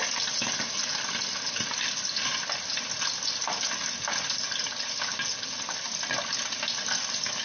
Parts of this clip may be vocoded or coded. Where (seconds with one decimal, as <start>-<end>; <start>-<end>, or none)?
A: none